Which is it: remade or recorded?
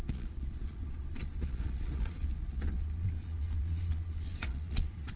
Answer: remade